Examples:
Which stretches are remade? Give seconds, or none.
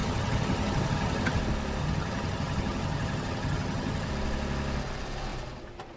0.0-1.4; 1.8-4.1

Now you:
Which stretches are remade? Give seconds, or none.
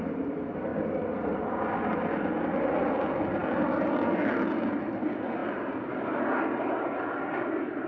3.4-3.9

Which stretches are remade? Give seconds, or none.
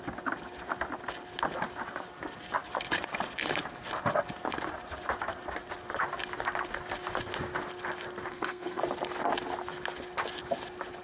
8.3-8.8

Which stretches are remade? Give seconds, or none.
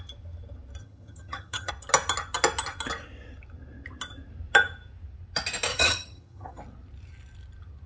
0.8-1.7; 5.7-6.6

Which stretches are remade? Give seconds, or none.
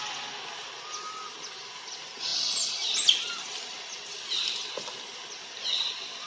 none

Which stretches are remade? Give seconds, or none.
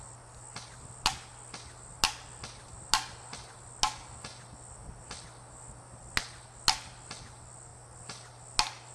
none